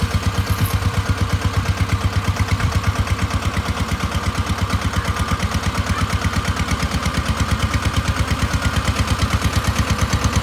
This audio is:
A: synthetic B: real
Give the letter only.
B